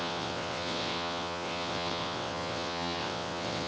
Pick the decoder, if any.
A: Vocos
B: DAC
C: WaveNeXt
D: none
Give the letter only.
C